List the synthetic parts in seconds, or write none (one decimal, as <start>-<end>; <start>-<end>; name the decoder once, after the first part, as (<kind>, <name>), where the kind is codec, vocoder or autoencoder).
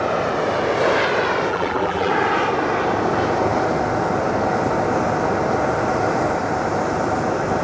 1.5-2.1 (vocoder, BigVGAN v2)